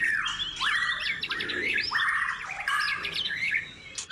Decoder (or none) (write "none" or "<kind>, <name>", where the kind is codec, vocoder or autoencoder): vocoder, BigVGAN v2